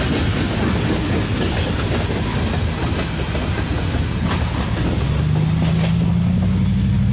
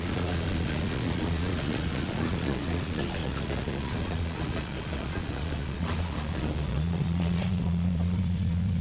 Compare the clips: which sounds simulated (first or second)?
second